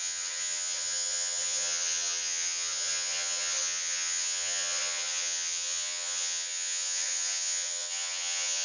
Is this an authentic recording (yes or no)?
no